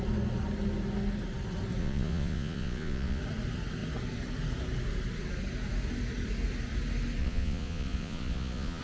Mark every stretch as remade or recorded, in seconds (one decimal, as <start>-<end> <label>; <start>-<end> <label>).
0.0-1.8 recorded; 1.8-3.2 remade; 3.2-7.2 recorded; 7.2-8.8 remade